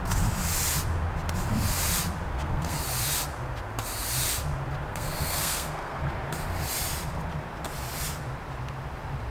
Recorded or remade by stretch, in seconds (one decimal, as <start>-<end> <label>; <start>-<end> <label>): 0.0-2.3 recorded; 2.3-2.8 remade; 2.8-4.9 recorded; 4.9-6.0 remade; 6.0-9.3 recorded